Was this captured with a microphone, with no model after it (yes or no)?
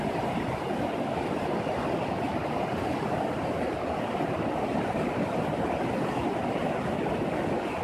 yes